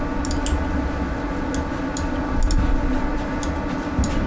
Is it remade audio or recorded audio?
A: recorded